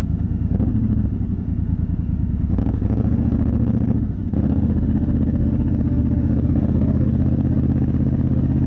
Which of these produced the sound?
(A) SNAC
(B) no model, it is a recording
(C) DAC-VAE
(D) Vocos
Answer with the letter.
C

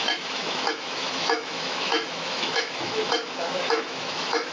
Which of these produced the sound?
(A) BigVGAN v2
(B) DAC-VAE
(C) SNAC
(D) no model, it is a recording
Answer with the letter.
B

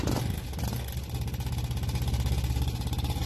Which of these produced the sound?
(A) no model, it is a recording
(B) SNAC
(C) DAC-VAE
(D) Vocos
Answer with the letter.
A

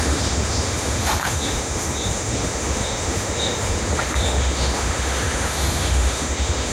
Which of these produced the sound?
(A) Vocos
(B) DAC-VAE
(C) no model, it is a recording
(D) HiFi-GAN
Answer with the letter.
B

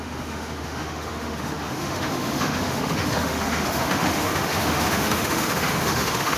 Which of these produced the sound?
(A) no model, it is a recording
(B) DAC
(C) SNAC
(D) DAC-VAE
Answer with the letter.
D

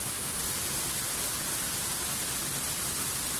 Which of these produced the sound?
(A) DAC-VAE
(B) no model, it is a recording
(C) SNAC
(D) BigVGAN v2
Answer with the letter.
B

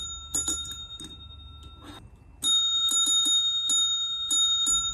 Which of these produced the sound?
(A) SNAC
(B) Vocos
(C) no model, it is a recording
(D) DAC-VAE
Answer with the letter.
C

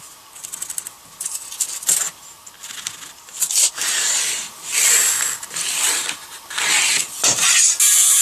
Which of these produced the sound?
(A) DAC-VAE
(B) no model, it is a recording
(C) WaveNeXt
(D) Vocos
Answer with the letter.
B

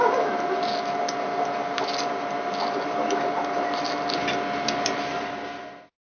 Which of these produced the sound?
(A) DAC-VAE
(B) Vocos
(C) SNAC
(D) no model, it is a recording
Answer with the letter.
D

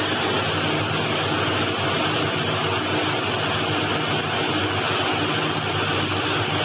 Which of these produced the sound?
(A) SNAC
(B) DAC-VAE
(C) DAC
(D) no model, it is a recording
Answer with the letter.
D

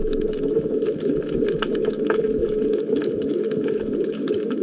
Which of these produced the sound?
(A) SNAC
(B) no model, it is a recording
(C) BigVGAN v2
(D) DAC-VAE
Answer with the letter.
D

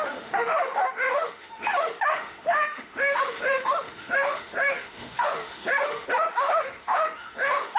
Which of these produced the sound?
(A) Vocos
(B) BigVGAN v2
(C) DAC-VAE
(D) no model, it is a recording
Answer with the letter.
C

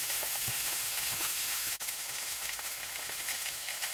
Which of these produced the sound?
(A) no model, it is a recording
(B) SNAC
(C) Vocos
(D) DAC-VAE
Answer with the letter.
D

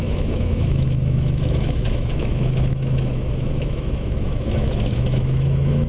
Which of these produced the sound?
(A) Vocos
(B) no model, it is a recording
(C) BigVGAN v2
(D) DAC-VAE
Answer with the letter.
D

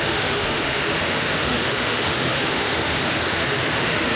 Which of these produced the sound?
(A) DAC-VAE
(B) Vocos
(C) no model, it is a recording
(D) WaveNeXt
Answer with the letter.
A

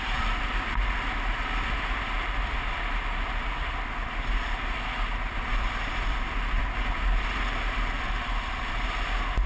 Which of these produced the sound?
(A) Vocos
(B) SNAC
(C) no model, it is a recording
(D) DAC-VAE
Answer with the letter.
C